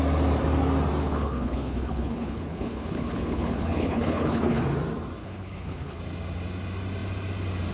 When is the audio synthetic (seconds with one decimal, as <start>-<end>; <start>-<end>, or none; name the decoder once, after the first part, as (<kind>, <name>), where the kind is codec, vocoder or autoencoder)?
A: 1.0-4.6 (codec, HILCodec); 5.2-6.0